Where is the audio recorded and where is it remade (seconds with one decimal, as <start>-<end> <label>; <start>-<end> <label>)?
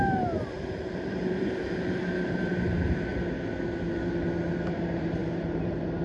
0.0-3.1 remade; 3.1-3.8 recorded; 3.8-6.0 remade